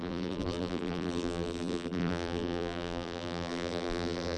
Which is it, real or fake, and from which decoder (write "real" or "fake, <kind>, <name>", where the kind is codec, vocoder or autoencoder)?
fake, vocoder, BigVGAN v2